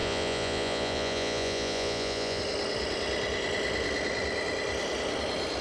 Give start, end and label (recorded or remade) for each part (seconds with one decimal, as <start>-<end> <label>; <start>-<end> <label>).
0.0-2.4 remade; 2.4-5.6 recorded